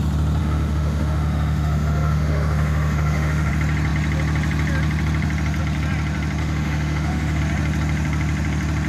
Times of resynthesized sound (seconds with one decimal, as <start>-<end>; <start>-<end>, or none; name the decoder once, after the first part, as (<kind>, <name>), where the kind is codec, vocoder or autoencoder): 0.4-3.5 (autoencoder, DAC-VAE); 6.4-7.4